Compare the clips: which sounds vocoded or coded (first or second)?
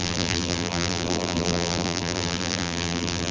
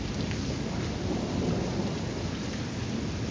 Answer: first